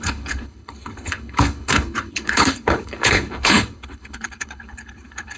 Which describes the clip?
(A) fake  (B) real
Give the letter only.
A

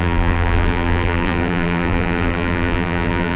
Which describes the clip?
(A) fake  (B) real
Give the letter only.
A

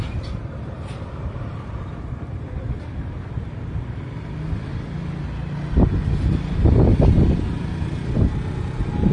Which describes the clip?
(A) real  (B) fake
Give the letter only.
A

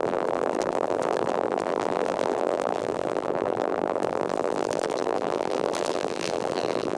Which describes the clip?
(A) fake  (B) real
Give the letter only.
A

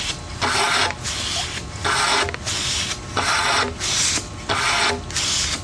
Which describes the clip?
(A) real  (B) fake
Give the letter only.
A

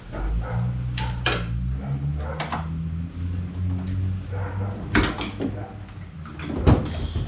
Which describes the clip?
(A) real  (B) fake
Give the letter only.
A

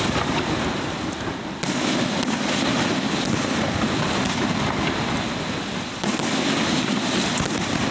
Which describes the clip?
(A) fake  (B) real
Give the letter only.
B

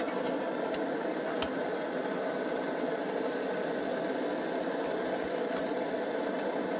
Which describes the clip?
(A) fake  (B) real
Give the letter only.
A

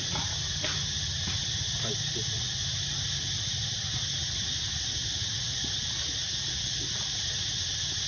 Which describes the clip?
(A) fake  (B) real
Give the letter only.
B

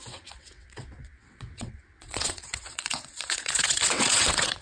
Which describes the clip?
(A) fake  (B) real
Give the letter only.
A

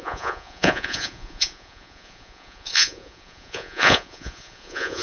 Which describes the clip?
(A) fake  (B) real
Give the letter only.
A